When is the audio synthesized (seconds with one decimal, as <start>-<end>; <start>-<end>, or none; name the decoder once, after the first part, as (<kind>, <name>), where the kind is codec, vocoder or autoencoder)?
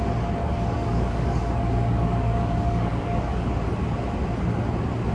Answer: 0.4-3.5 (codec, DAC)